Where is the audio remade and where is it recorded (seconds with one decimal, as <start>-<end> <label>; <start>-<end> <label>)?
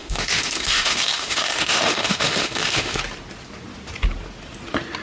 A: 0.0-3.0 remade; 3.0-5.0 recorded